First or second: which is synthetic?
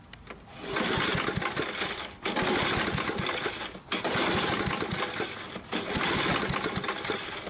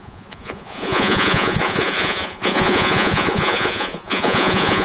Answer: second